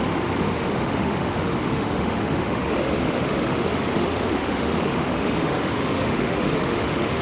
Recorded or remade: remade